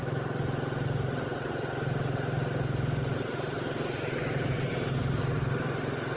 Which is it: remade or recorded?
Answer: recorded